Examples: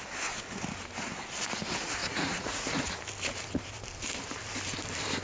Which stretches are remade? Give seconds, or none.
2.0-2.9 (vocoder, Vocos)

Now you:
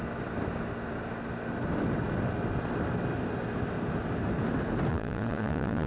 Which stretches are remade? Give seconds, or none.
4.9-5.9 (vocoder, Vocos)

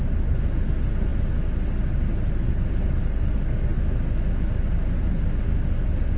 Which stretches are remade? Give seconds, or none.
none

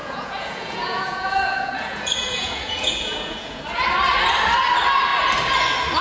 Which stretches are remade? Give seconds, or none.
0.0-3.6 (vocoder, Vocos)

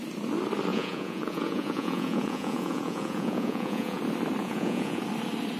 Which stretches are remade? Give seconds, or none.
0.7-4.0 (vocoder, Vocos); 4.4-5.0